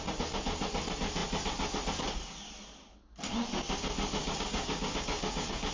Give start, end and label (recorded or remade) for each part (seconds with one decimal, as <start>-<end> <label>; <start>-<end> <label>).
0.0-4.2 recorded; 4.2-5.7 remade